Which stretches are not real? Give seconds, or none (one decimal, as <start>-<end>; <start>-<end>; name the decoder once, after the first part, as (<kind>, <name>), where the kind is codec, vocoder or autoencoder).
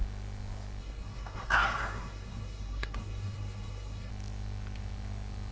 0.8-4.1 (codec, SNAC)